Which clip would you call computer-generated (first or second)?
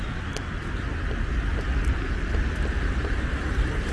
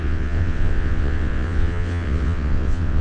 second